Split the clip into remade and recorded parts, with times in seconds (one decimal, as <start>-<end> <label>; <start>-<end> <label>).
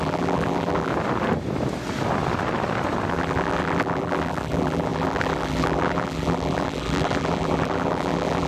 0.0-0.9 remade; 0.9-3.1 recorded; 3.1-8.5 remade